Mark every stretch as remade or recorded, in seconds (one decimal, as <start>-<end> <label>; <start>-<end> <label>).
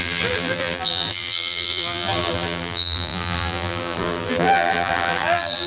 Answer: 0.0-5.7 remade